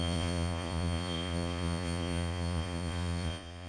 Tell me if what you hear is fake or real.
fake